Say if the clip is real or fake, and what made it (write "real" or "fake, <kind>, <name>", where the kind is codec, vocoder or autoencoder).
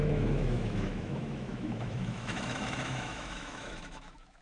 fake, autoencoder, DAC-VAE